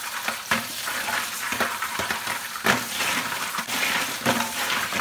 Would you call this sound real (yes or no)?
no